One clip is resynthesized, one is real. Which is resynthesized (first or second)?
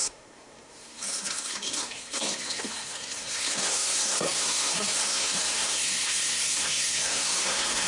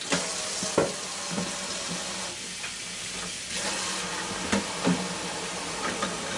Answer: first